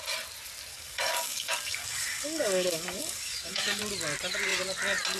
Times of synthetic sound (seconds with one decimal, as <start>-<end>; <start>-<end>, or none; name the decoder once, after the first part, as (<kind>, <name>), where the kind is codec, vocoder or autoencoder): 0.7-3.8 (codec, DAC)